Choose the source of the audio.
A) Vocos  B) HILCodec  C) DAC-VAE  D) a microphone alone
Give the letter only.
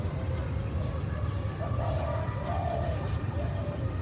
D